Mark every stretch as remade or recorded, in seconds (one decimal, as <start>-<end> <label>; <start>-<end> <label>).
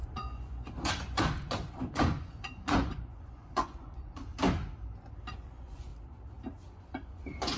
0.0-4.3 remade; 4.3-5.3 recorded; 5.3-5.9 remade; 5.9-6.8 recorded; 6.8-7.6 remade